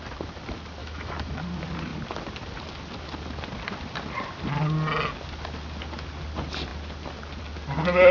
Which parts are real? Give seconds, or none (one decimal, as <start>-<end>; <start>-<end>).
0.0-0.8; 1.4-8.1